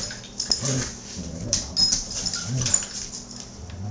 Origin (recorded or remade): recorded